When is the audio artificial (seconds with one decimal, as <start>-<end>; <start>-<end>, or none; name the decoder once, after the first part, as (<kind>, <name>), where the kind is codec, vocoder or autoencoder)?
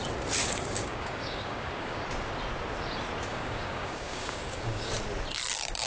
0.4-2.0 (codec, DAC); 3.3-4.9